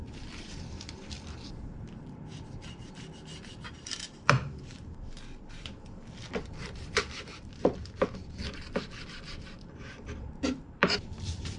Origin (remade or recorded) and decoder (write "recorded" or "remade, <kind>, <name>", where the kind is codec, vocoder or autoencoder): remade, vocoder, BigVGAN v2